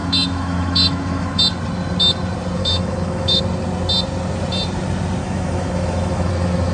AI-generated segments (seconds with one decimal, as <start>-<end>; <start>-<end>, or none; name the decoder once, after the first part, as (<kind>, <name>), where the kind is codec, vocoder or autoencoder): 0.0-1.4 (autoencoder, DAC-VAE); 2.6-3.4; 5.2-6.3